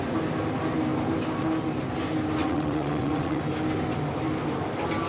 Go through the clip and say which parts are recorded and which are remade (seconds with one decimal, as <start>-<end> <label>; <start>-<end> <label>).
0.0-2.4 recorded; 2.4-3.4 remade; 3.4-5.1 recorded